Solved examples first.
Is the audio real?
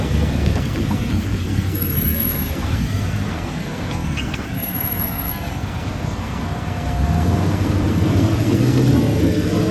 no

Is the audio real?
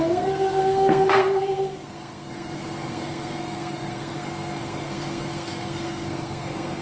no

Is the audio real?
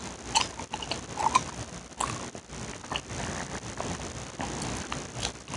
yes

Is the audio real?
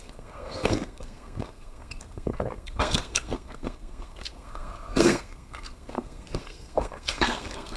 no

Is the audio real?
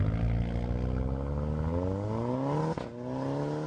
yes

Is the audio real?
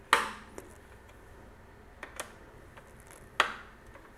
yes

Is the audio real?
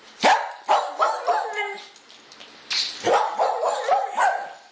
yes